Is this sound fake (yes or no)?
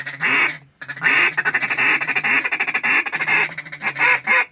no